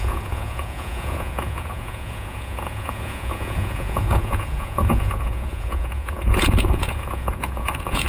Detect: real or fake fake